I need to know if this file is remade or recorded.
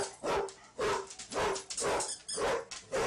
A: recorded